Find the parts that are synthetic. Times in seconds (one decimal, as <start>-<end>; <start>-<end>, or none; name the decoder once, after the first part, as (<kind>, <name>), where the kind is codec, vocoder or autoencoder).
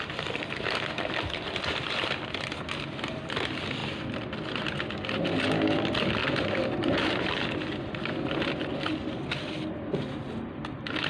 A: 6.2-8.0 (vocoder, BigVGAN v2); 8.7-9.4